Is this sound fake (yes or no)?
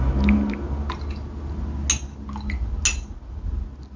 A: no